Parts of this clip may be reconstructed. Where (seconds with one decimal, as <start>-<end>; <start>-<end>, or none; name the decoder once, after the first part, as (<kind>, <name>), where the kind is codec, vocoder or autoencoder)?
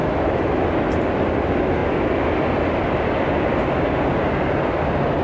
none